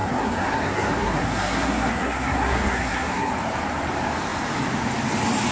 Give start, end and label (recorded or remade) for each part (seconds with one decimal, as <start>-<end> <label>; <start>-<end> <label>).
0.0-3.3 remade; 3.3-5.5 recorded